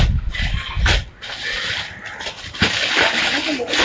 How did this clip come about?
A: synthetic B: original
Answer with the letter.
B